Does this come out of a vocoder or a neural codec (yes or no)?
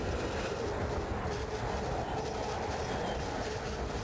no